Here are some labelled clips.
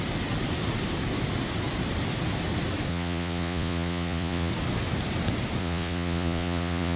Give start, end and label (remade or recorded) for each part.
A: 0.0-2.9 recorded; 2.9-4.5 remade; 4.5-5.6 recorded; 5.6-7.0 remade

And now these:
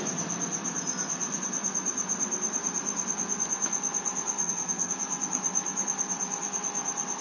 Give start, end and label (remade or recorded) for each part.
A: 0.0-4.4 recorded; 4.4-4.9 remade; 4.9-7.2 recorded